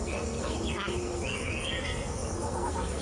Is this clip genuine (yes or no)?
no